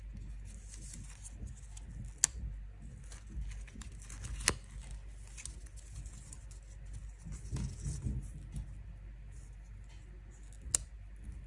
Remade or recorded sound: recorded